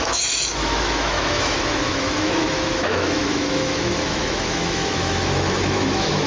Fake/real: fake